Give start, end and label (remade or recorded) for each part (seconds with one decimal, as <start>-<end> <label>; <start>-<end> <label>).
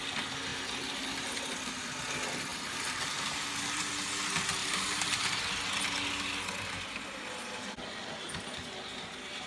0.0-2.5 recorded; 2.5-3.9 remade; 3.9-4.6 recorded; 4.6-5.4 remade; 5.4-9.5 recorded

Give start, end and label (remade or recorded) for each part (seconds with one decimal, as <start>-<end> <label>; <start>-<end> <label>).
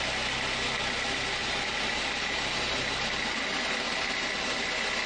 0.0-1.4 recorded; 1.4-3.0 remade; 3.0-5.1 recorded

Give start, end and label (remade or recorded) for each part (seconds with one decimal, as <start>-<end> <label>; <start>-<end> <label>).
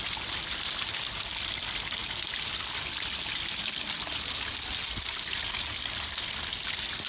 0.0-7.1 recorded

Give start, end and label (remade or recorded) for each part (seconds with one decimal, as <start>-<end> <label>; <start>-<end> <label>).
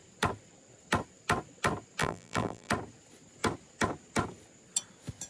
0.0-2.0 recorded; 2.0-2.7 remade; 2.7-5.3 recorded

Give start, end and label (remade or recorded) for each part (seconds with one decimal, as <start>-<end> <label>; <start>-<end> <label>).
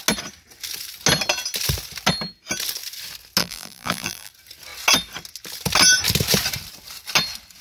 0.0-3.4 recorded; 3.4-4.3 remade; 4.3-7.6 recorded